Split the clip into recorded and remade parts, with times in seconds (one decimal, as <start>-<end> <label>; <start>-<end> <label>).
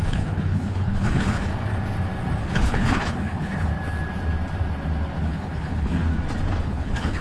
0.0-1.5 remade; 1.5-2.4 recorded; 2.4-3.7 remade; 3.7-5.2 recorded; 5.2-6.1 remade; 6.1-6.6 recorded; 6.6-7.2 remade